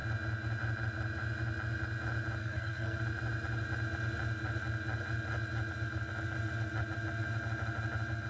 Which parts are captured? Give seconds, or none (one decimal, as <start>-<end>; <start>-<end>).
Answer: 0.0-2.4; 3.0-8.3